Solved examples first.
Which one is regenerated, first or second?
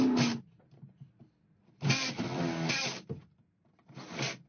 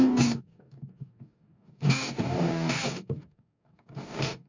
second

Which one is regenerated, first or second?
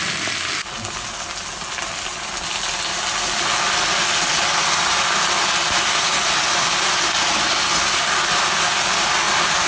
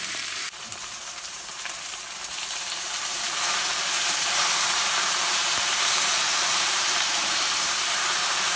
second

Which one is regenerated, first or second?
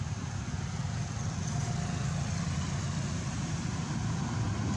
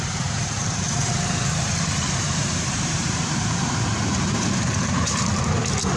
second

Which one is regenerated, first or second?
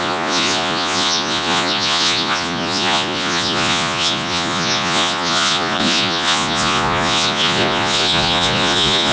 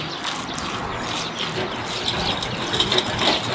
first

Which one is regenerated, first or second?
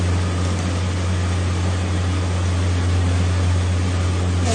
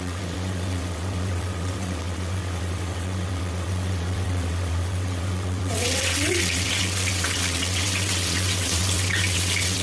second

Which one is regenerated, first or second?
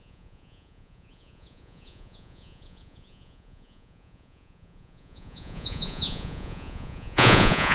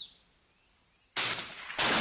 first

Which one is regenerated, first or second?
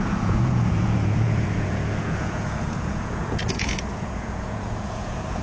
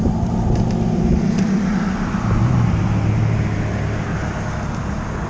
first